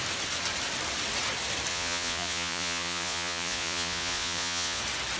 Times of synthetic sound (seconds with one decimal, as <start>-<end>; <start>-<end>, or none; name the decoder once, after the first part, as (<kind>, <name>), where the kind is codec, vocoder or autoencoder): 1.7-4.8 (vocoder, Vocos)